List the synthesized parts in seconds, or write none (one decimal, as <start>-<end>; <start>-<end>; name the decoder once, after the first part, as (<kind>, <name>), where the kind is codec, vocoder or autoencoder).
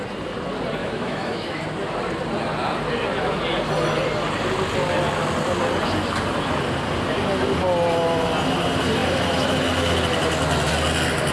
0.8-1.6 (autoencoder, DAC-VAE)